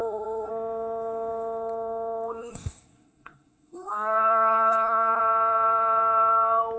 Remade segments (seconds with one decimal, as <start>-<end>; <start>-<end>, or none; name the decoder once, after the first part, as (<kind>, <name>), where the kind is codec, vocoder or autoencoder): 0.0-0.5 (codec, SNAC); 2.4-5.2